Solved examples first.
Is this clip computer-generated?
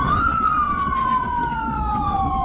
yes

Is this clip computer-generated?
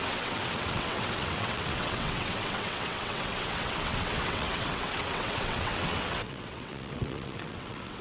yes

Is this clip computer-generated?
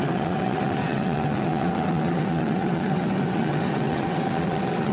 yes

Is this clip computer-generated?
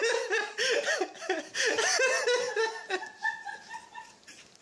no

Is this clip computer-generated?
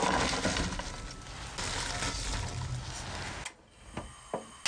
no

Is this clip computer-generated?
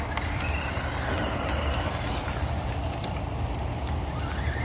no